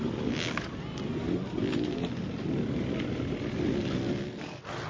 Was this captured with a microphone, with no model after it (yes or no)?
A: yes